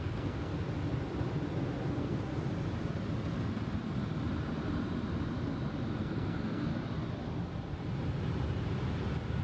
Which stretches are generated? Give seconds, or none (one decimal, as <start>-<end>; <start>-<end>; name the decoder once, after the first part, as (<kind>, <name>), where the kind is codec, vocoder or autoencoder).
0.0-0.5 (codec, SNAC); 1.9-2.3; 6.0-6.7